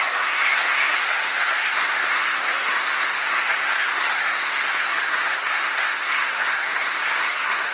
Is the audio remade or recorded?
remade